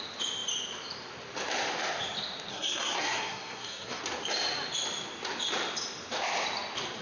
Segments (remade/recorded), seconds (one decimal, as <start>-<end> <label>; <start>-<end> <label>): 0.0-2.5 recorded; 2.5-4.0 remade; 4.0-7.0 recorded